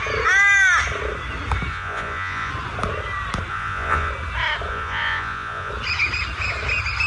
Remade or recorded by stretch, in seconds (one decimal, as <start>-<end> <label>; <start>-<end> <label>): 0.0-1.7 recorded; 1.7-2.5 remade; 2.5-3.5 recorded; 3.5-4.1 remade; 4.1-4.7 recorded; 4.7-5.7 remade; 5.7-7.1 recorded